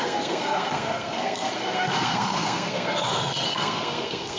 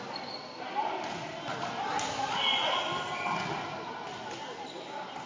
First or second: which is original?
second